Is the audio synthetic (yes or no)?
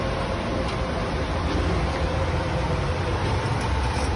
no